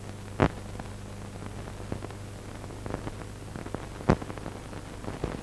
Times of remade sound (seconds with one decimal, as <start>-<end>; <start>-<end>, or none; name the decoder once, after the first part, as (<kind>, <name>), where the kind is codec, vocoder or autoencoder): none